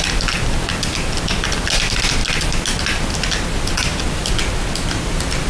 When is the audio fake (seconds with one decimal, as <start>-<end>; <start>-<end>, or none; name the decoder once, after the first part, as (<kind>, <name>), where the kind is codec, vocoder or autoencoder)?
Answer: none